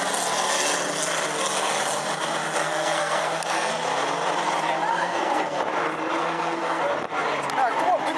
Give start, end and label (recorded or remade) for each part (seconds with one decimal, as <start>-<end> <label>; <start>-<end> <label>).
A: 0.0-2.6 recorded; 2.6-3.7 remade; 3.7-4.9 recorded; 4.9-5.6 remade; 5.6-6.2 recorded; 6.2-6.8 remade; 6.8-8.2 recorded